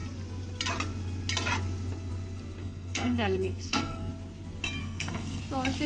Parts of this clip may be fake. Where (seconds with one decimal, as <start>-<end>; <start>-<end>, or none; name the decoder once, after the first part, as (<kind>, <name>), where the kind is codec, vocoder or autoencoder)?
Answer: 2.6-4.1 (codec, SNAC); 4.8-5.4

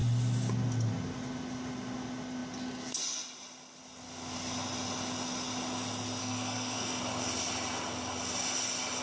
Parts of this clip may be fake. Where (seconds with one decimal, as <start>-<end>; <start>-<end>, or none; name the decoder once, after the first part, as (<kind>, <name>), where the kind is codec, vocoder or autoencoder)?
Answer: 6.2-7.0 (codec, SNAC)

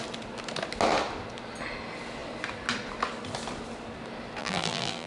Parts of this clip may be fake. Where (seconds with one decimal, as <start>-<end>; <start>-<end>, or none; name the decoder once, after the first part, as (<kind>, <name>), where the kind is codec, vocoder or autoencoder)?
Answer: 4.4-5.1 (vocoder, BigVGAN v2)

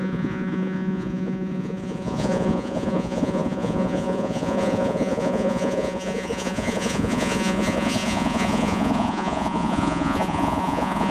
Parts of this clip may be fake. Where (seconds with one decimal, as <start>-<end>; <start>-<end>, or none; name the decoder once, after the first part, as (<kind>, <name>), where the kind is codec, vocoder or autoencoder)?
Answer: 0.0-11.1 (vocoder, Vocos)

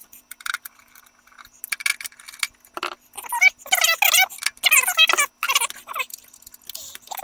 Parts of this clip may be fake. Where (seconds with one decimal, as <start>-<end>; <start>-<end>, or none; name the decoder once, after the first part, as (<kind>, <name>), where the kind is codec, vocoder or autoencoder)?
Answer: 0.0-1.0 (vocoder, BigVGAN v2)

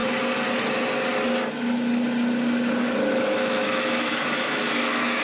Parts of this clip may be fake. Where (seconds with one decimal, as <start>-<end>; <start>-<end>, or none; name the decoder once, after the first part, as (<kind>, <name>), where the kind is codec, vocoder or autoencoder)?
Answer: 3.1-5.2 (autoencoder, DAC-VAE)